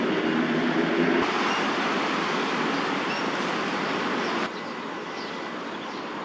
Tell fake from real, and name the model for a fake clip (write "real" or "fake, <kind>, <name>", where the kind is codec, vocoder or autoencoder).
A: real